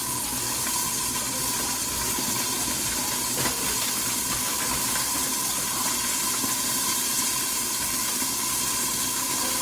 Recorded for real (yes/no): yes